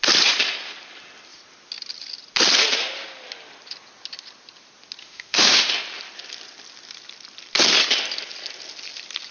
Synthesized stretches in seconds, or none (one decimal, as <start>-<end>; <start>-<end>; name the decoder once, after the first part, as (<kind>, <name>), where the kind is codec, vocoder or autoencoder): 5.0-5.7 (autoencoder, DAC-VAE)